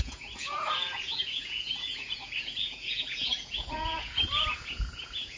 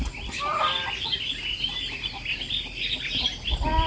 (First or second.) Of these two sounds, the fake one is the first